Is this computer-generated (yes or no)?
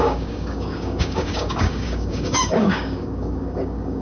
yes